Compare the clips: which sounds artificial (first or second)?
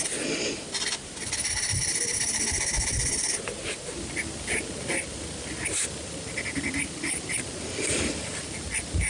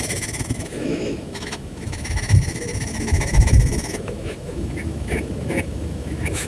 second